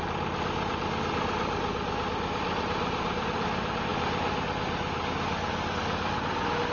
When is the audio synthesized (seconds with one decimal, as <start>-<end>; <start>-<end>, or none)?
none